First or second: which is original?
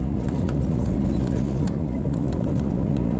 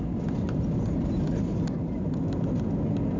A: second